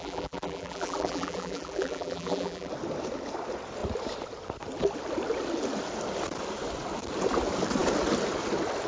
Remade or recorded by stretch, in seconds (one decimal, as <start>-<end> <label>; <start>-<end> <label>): 0.0-2.7 remade; 2.7-8.9 recorded